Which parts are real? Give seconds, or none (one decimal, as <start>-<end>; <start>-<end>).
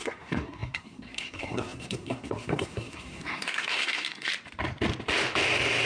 4.3-5.9